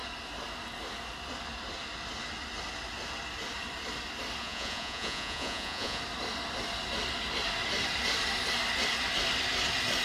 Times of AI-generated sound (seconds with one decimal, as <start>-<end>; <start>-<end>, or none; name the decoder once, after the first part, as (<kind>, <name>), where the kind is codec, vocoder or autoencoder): 4.4-6.0 (vocoder, Vocos)